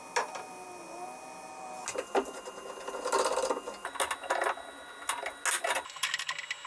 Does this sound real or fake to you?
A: real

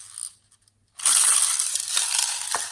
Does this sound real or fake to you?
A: real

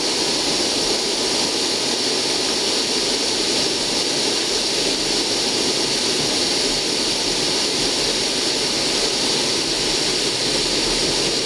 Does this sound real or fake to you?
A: real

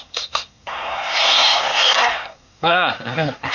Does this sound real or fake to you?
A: fake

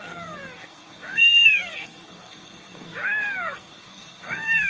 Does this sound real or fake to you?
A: fake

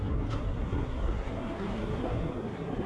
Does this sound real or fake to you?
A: fake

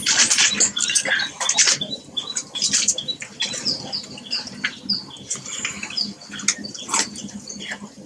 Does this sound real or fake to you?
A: real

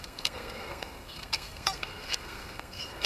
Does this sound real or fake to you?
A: fake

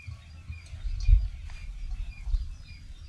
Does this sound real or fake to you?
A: real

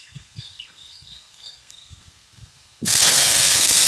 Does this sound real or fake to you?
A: fake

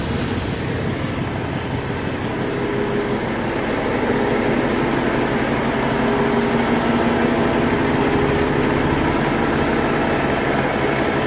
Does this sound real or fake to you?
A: real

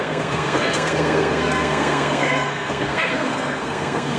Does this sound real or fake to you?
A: fake